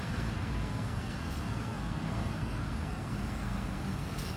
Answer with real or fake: fake